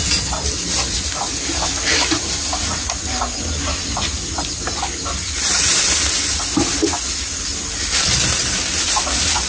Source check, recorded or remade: recorded